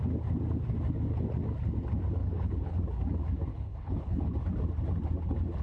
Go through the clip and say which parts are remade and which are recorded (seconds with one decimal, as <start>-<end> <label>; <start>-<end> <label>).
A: 0.0-2.2 recorded; 2.2-2.8 remade; 2.8-3.5 recorded; 3.5-4.2 remade; 4.2-5.6 recorded